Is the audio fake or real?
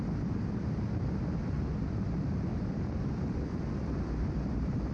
fake